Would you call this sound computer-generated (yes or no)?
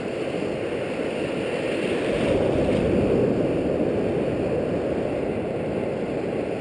no